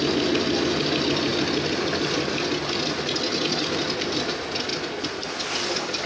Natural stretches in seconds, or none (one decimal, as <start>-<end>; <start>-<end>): 0.0-4.7; 5.3-6.1

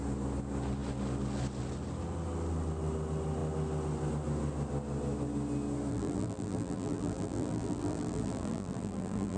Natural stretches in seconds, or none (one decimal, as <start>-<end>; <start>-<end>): 0.0-5.9

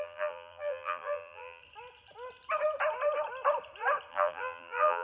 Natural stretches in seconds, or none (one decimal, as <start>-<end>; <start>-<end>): 1.6-4.1

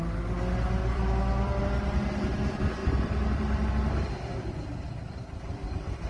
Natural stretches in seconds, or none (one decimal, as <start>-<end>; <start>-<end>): 0.0-0.8; 1.6-2.8; 3.7-4.8

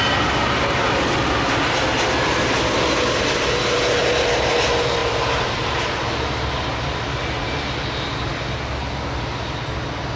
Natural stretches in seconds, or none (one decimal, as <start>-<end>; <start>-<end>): 0.0-5.0; 6.2-10.2

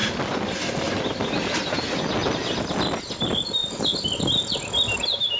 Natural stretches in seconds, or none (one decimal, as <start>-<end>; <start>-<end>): 0.0-5.4

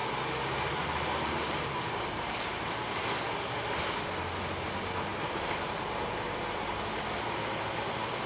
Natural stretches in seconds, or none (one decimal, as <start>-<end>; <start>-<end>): 3.7-5.1; 6.7-8.3

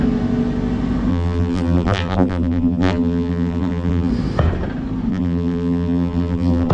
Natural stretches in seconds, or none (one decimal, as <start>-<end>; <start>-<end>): 0.0-1.1; 4.1-5.1